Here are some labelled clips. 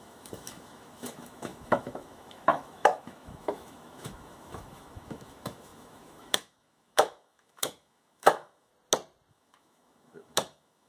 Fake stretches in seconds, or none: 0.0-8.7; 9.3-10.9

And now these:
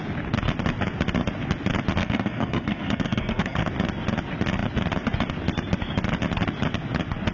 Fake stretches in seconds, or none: 2.0-3.7